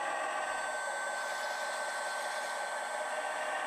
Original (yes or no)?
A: yes